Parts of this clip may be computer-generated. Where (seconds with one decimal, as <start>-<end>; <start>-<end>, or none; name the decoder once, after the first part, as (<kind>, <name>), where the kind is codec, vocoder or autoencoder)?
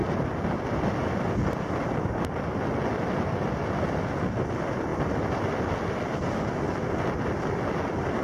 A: none